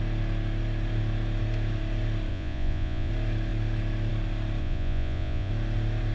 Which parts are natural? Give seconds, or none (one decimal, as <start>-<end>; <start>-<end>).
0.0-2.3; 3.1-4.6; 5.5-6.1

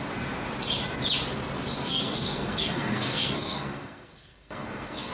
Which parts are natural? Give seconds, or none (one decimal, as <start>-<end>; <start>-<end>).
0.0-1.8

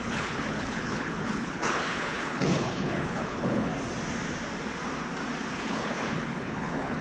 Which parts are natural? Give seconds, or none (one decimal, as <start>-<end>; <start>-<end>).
3.7-5.5

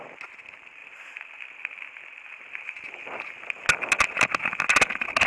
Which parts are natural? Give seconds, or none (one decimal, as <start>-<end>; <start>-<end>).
0.0-5.3

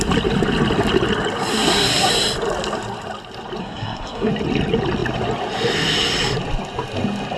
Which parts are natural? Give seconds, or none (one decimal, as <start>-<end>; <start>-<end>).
0.0-1.5; 2.1-3.6; 4.3-7.4